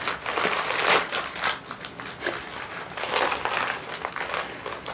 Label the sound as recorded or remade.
recorded